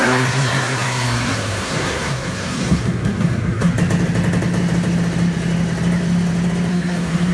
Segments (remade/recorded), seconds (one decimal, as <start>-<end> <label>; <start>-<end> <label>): 0.0-3.7 remade; 3.7-6.7 recorded; 6.7-7.3 remade